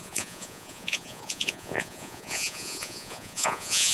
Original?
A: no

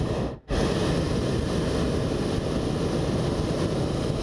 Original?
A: yes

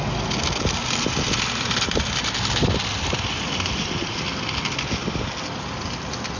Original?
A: yes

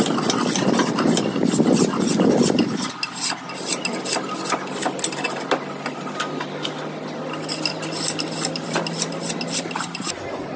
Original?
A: yes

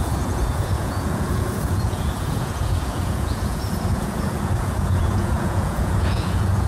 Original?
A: no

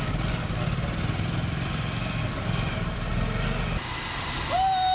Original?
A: yes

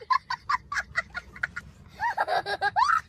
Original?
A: yes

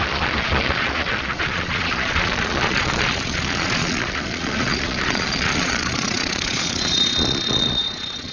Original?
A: no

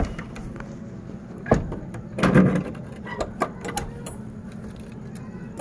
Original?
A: yes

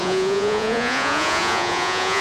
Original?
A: no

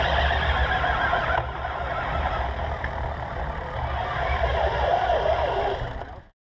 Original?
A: yes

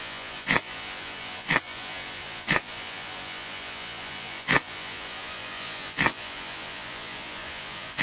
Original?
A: no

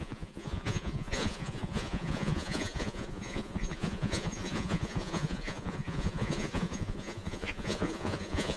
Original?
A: no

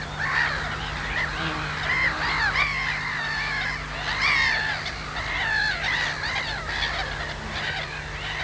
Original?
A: yes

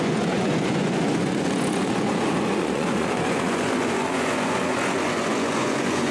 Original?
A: no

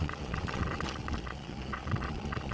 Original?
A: no